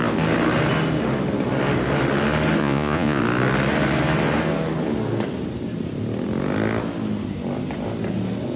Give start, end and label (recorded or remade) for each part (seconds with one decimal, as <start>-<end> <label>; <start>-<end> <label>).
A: 0.0-2.6 recorded; 2.6-3.2 remade; 3.2-8.6 recorded